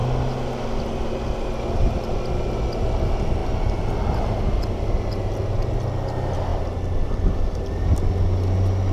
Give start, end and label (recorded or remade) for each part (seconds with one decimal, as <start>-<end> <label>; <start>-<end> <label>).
0.0-8.9 recorded